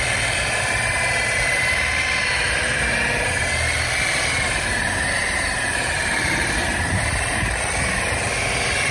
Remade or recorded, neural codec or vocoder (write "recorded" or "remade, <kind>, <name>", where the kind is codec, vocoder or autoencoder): recorded